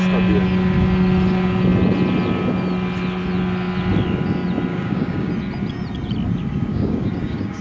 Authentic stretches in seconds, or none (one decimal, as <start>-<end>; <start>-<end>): 0.0-4.7; 5.3-6.7